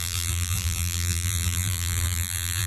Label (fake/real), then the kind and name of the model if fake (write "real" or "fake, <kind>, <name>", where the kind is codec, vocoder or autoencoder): fake, vocoder, BigVGAN v2